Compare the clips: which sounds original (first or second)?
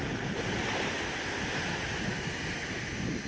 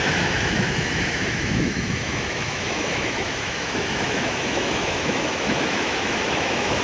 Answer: first